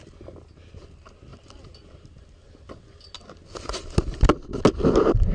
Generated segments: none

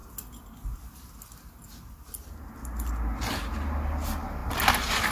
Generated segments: none

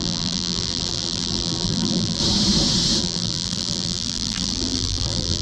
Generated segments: 0.0-2.2 (vocoder, BigVGAN v2); 3.0-5.4

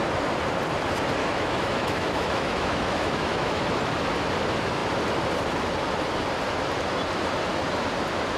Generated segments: 1.2-3.6 (autoencoder, DAC-VAE)

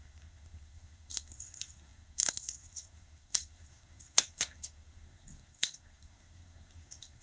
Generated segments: 0.0-7.2 (codec, SNAC)

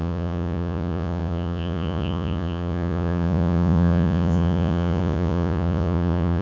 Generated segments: 0.0-6.4 (vocoder, Vocos)